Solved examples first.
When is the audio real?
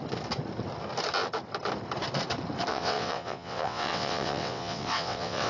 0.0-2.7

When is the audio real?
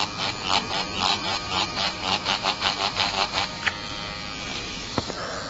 0.0-1.1; 3.7-4.5; 5.1-5.5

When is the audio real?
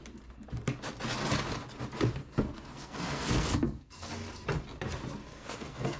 0.0-2.2; 4.1-5.2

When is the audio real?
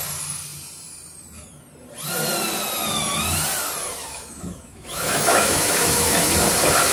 0.0-4.0; 6.3-6.9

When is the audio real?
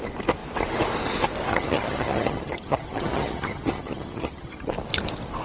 0.0-1.5; 4.7-5.4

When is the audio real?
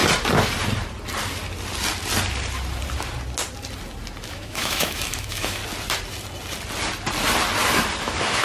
0.0-4.3; 5.6-8.0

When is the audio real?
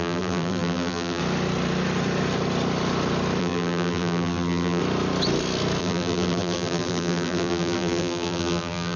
1.2-3.4; 4.8-5.8